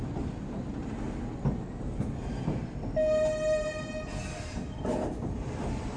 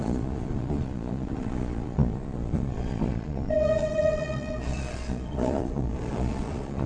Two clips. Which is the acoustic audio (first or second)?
first